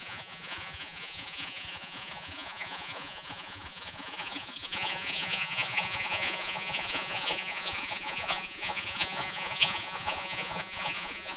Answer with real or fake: fake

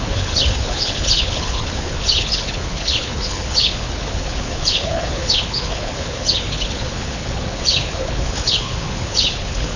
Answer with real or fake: fake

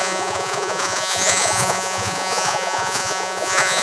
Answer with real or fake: fake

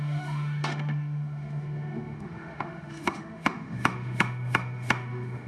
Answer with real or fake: fake